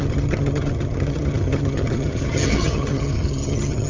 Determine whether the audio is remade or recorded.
remade